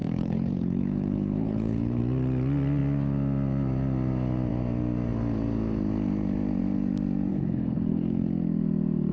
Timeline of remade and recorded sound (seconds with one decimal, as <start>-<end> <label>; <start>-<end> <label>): 0.0-2.0 remade; 2.0-7.3 recorded; 7.3-8.3 remade; 8.3-9.1 recorded